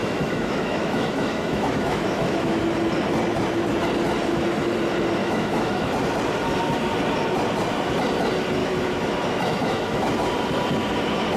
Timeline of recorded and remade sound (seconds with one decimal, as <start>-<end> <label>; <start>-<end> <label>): 0.0-2.6 remade; 2.6-5.2 recorded; 5.2-5.9 remade; 5.9-8.6 recorded; 8.6-10.1 remade; 10.1-11.4 recorded